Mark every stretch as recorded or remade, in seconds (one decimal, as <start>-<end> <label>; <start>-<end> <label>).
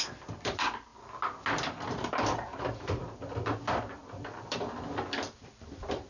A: 0.0-0.9 remade; 0.9-2.6 recorded; 2.6-6.1 remade